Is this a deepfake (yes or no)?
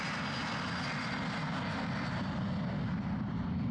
no